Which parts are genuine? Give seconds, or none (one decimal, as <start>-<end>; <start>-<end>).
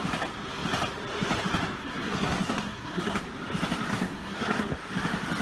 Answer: 0.0-1.8; 3.2-3.9; 4.7-5.4